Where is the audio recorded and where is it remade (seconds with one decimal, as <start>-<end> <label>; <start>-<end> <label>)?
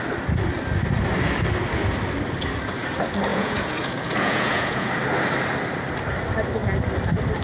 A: 0.0-3.3 recorded; 3.3-4.9 remade; 4.9-7.4 recorded